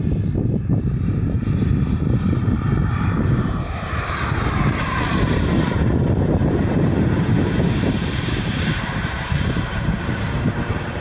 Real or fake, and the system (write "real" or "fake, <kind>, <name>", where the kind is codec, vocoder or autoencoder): fake, vocoder, BigVGAN v2